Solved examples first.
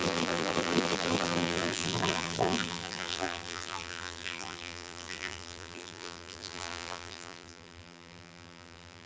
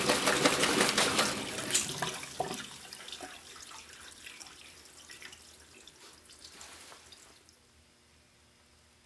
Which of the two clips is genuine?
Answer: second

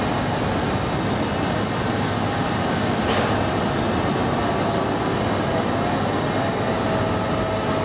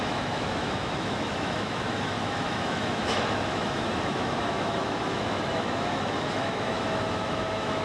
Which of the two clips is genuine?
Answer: first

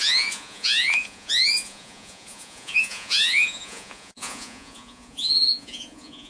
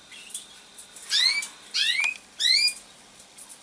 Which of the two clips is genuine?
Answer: second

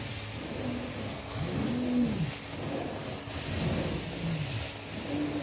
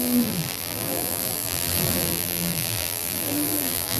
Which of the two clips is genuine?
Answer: first